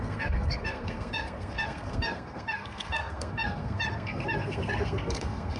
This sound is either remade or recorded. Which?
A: remade